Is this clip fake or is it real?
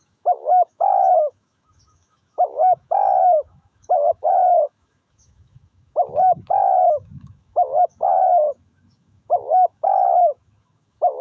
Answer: fake